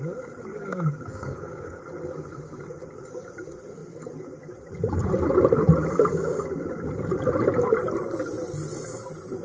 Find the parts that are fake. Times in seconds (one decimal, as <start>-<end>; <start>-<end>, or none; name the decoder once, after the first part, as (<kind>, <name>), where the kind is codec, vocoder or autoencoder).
0.5-1.8 (codec, DAC)